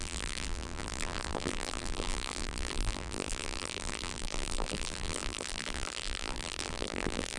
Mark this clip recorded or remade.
remade